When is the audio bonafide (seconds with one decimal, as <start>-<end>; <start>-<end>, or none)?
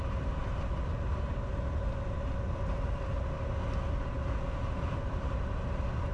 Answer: 0.0-6.1